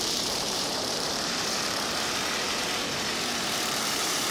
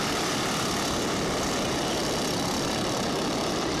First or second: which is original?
second